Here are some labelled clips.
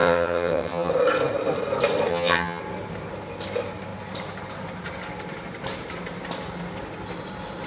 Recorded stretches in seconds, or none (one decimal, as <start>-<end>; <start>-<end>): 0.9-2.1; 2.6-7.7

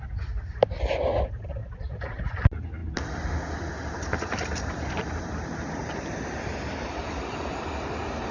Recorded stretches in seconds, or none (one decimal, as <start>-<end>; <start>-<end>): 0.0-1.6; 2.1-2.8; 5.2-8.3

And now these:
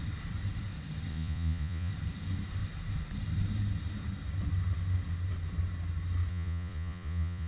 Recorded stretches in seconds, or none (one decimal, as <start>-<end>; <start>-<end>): 0.0-1.1; 1.9-6.3

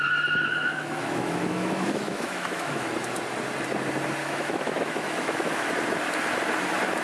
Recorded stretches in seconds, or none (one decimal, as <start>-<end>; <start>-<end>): 0.0-0.5; 2.9-4.2; 5.7-7.0

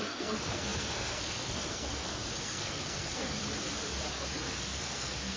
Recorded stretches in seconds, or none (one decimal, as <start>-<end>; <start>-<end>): 3.4-4.1

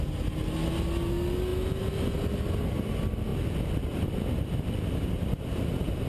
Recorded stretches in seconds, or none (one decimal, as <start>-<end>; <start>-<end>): 0.0-6.1

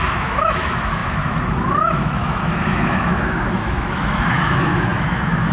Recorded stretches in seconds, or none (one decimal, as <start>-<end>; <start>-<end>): none

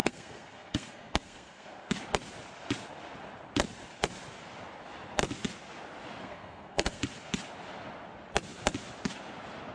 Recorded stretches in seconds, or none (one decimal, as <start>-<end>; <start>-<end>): 1.9-6.2; 7.0-9.7